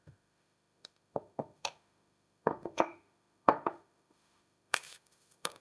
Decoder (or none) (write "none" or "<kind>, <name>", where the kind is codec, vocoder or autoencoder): autoencoder, DAC-VAE